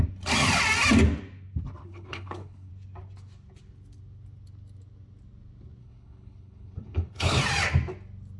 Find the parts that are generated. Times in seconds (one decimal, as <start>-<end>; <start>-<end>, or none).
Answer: 1.8-2.7; 5.8-7.4